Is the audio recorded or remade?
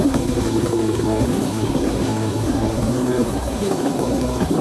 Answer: remade